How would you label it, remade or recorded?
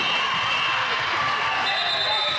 recorded